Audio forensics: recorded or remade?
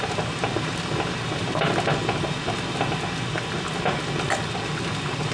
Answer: recorded